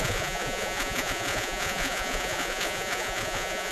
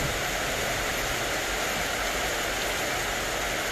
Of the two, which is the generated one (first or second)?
first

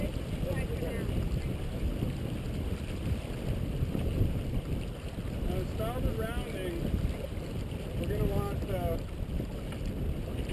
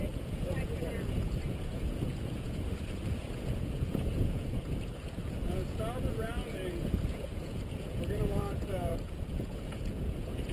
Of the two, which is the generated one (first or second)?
second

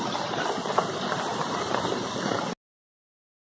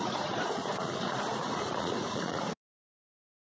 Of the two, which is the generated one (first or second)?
second